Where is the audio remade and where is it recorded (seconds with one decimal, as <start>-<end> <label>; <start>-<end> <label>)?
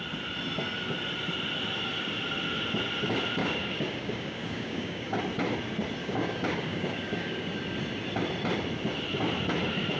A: 0.0-3.4 recorded; 3.4-5.2 remade; 5.2-6.0 recorded; 6.0-7.6 remade; 7.6-10.0 recorded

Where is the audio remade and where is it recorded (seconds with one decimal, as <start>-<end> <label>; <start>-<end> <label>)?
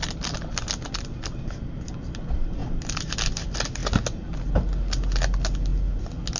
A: 0.0-6.4 recorded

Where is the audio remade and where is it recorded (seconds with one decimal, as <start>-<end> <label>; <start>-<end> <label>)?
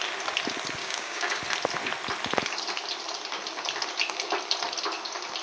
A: 0.0-0.8 recorded; 0.8-1.4 remade; 1.4-5.4 recorded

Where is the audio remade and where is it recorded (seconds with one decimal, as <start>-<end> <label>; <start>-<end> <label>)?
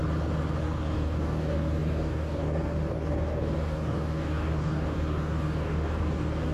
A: 0.0-0.6 recorded; 0.6-6.5 remade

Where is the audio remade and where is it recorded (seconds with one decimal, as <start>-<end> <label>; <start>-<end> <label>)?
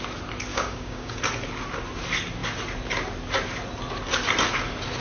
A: 0.0-0.5 recorded; 0.5-1.2 remade; 1.2-5.0 recorded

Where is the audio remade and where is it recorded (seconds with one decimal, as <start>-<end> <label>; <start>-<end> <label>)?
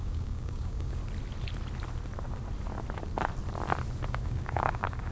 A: 0.0-1.0 remade; 1.0-4.1 recorded; 4.1-5.1 remade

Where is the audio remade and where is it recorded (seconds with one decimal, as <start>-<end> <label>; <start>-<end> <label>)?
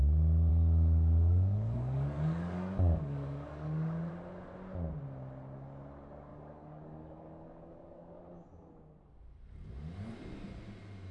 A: 0.0-0.5 recorded; 0.5-4.1 remade; 4.1-6.3 recorded; 6.3-8.2 remade; 8.2-11.1 recorded